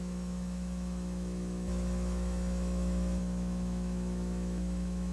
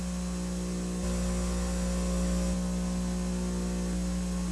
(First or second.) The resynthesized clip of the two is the first